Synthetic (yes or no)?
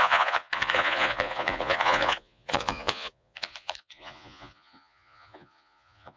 yes